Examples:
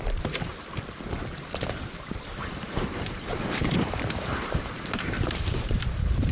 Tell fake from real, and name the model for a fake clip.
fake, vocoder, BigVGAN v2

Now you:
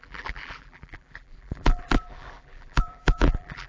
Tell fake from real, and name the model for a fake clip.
fake, vocoder, BigVGAN v2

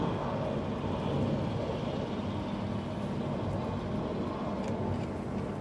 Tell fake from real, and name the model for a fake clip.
real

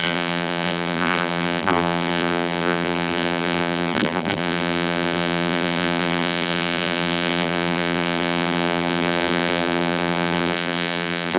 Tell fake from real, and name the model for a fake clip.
fake, vocoder, BigVGAN v2